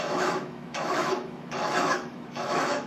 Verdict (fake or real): fake